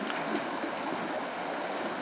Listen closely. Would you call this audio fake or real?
real